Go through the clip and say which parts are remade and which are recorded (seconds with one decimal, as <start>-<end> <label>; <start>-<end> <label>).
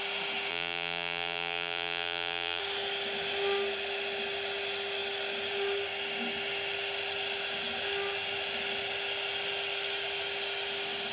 0.0-0.5 recorded; 0.5-2.6 remade; 2.6-11.1 recorded